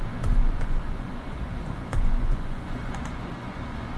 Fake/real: fake